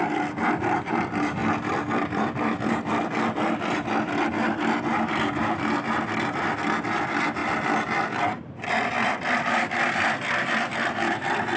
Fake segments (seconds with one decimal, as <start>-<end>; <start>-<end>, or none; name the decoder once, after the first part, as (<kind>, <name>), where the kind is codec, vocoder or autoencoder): 1.4-3.9 (vocoder, BigVGAN v2); 7.4-9.9